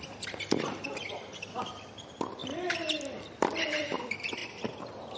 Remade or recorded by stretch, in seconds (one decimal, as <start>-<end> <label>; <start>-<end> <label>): 0.0-2.4 recorded; 2.4-4.0 remade; 4.0-5.2 recorded